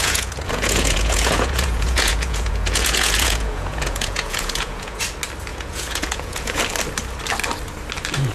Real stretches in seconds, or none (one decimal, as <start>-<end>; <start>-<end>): 5.0-5.5; 6.6-8.3